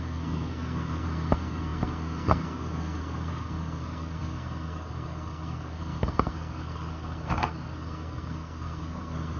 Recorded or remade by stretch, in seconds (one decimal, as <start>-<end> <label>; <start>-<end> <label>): 0.0-9.4 remade